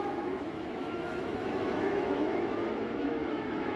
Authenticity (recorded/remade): remade